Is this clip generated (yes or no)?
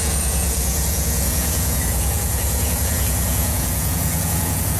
yes